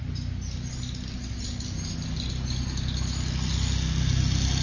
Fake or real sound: real